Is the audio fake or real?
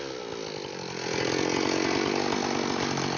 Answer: real